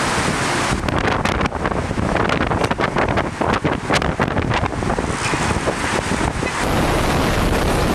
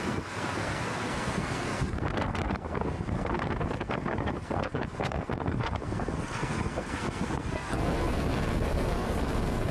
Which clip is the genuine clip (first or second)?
first